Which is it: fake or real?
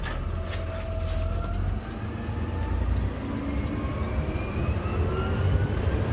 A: real